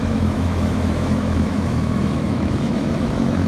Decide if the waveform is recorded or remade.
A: remade